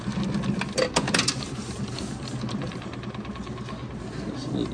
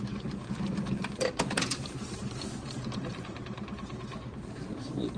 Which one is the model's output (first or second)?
second